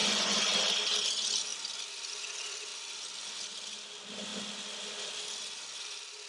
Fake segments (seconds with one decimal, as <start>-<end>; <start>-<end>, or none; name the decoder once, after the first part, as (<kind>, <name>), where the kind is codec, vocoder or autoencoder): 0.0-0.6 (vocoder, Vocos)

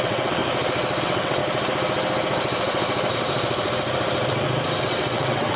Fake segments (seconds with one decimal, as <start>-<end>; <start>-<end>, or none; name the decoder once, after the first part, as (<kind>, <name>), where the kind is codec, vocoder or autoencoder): 0.0-0.4 (vocoder, WaveNeXt); 1.0-1.4; 4.8-5.6

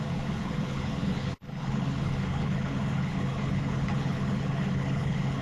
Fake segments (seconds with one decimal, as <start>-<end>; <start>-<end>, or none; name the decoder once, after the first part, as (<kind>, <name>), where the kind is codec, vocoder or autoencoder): 0.0-5.4 (codec, HILCodec)

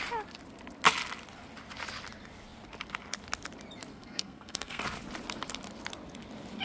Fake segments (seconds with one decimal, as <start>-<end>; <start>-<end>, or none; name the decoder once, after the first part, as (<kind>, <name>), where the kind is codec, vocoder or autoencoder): 3.9-4.8 (codec, SNAC)